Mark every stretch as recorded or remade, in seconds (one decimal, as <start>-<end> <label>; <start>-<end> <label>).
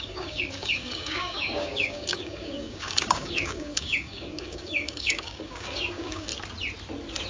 0.0-6.3 remade; 6.3-7.3 recorded